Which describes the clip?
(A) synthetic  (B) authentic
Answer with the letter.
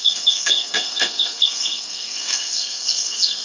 A